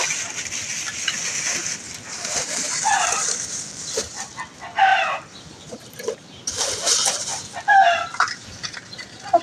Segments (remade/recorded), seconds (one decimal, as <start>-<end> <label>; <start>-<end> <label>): 0.0-1.6 recorded; 1.6-4.3 remade; 4.3-4.9 recorded; 4.9-8.9 remade; 8.9-9.4 recorded